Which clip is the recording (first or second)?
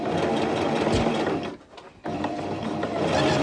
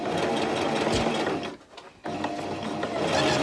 second